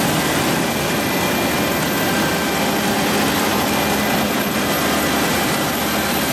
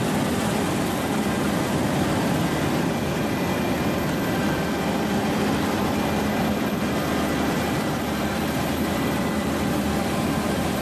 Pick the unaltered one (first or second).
first